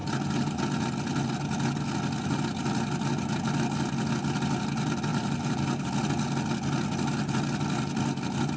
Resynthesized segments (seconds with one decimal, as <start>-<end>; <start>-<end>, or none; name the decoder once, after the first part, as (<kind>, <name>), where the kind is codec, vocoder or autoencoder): 0.0-0.6 (vocoder, BigVGAN v2); 5.1-5.9